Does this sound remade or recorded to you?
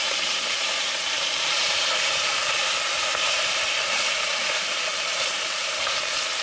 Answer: remade